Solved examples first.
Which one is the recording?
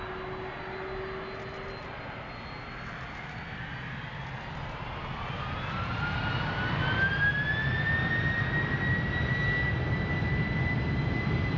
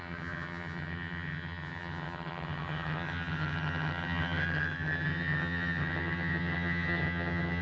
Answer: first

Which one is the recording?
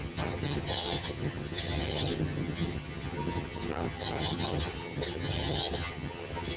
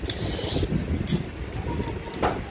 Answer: second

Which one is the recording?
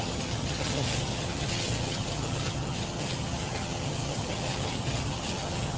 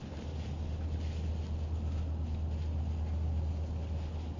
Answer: second